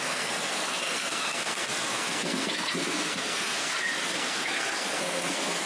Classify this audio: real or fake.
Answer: fake